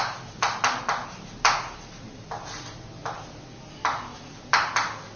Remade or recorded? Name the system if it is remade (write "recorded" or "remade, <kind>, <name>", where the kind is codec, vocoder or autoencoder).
recorded